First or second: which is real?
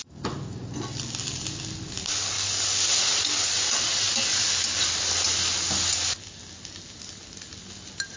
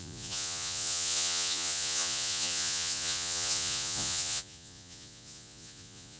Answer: first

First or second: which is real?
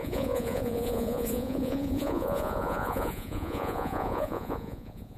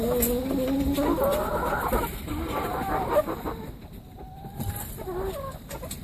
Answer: second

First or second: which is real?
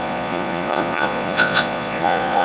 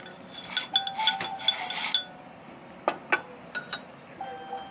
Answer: second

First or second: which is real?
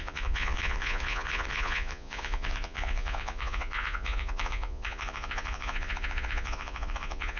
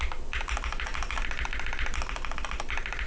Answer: second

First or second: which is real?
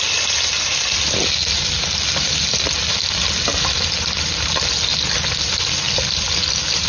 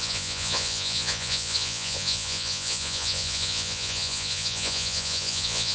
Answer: first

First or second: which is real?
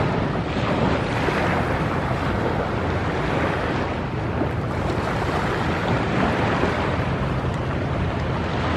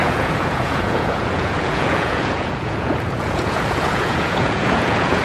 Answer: first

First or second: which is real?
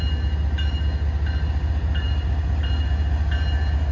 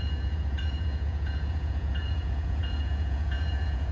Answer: first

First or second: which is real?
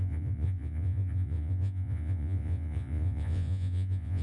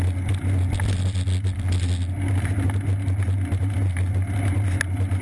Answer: second